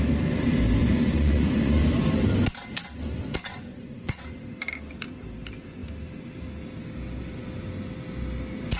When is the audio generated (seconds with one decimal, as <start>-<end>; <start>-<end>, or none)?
0.8-1.8; 3.5-4.2